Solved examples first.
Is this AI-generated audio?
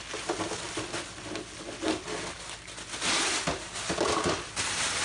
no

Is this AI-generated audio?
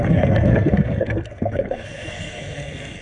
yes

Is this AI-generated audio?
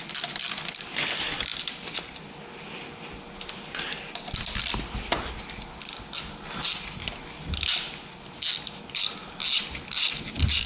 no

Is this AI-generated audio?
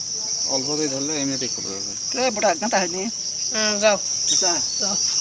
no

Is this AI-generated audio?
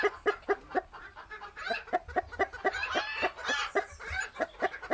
no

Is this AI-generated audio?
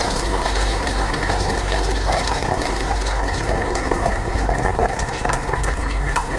yes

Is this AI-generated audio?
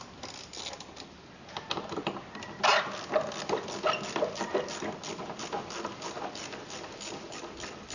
no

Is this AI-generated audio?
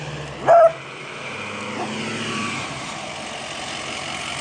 no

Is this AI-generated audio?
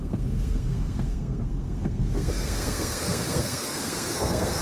yes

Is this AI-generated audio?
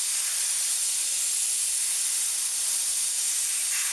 no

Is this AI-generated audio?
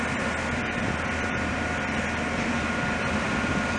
no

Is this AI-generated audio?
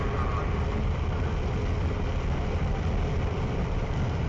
no